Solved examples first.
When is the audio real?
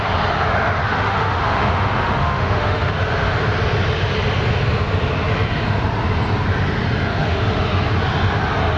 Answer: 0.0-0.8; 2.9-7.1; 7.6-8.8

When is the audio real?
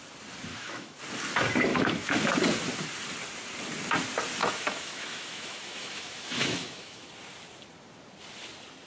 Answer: 0.0-0.5; 1.0-1.7; 2.3-4.4; 7.1-8.9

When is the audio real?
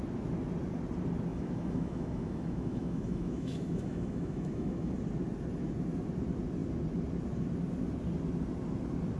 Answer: 0.0-1.3; 4.9-9.2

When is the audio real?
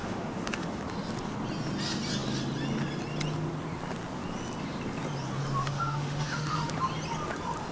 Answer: 0.8-5.6; 6.7-7.7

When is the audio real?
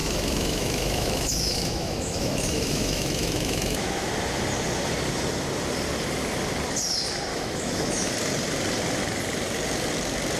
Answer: 4.1-7.3; 8.1-10.4